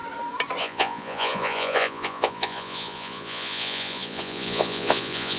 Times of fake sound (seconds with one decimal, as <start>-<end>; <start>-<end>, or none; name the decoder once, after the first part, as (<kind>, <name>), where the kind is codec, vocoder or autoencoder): 0.6-5.4 (vocoder, Vocos)